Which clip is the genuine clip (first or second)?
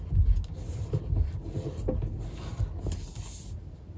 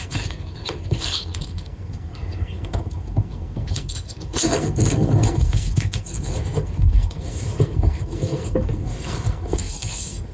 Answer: first